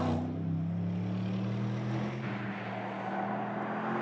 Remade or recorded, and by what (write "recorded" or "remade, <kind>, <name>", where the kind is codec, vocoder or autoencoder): recorded